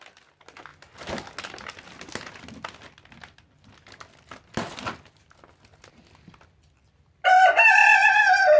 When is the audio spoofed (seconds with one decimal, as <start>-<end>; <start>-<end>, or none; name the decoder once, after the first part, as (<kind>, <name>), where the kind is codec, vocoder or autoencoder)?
none